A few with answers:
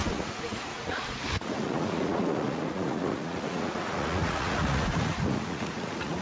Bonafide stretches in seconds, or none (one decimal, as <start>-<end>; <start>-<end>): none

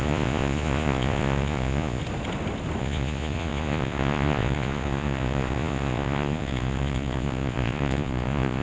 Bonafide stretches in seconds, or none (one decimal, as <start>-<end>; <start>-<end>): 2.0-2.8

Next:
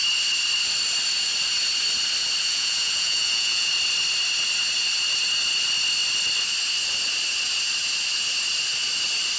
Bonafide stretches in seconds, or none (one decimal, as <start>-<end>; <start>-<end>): 0.0-2.4; 3.7-9.4

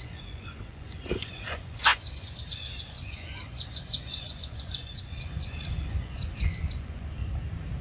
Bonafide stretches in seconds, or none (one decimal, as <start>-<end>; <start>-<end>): 7.2-7.8